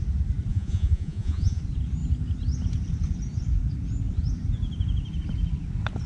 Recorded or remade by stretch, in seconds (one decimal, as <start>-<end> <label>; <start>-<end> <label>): 0.0-0.5 recorded; 0.5-1.6 remade; 1.6-6.1 recorded